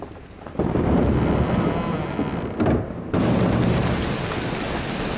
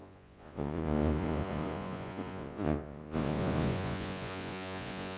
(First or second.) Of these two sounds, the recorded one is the first